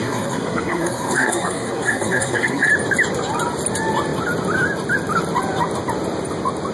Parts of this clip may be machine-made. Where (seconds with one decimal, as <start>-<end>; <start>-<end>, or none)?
0.0-2.7